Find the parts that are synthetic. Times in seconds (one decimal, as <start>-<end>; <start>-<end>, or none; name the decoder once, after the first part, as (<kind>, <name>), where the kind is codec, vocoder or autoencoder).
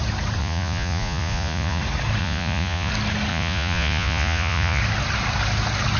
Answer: 0.4-1.8 (vocoder, Vocos); 2.2-2.9; 3.3-4.8